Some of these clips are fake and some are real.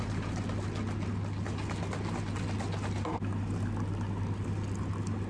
real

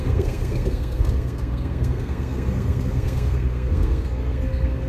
fake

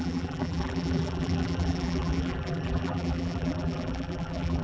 fake